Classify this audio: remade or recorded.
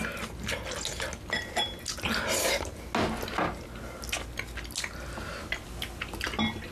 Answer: recorded